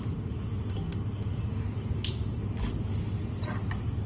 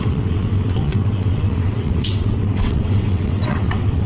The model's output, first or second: second